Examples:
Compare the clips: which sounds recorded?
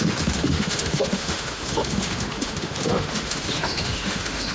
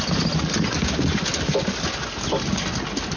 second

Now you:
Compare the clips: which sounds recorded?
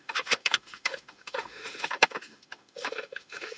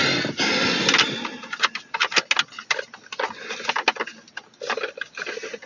second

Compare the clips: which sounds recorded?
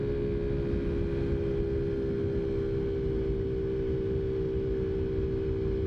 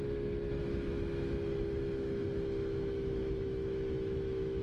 first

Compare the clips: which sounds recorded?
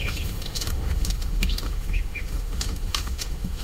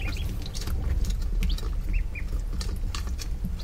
second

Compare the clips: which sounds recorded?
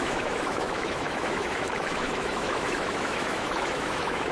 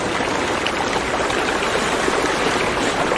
second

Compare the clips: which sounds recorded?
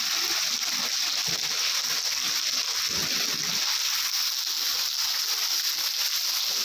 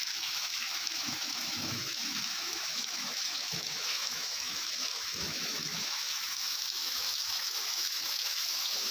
first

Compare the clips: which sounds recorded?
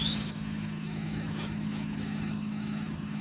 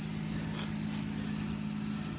second